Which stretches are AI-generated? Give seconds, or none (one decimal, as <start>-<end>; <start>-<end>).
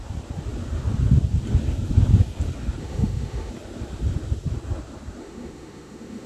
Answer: 2.8-3.5; 5.2-6.3